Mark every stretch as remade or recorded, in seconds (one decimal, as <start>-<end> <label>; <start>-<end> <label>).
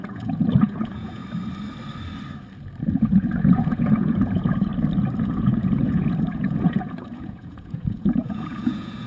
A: 0.0-1.2 remade; 1.2-2.8 recorded; 2.8-4.7 remade; 4.7-5.2 recorded; 5.2-9.1 remade